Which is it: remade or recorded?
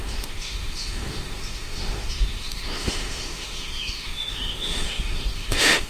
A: remade